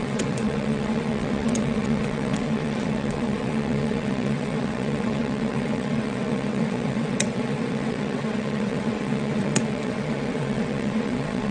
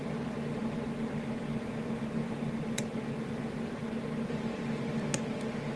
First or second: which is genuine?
second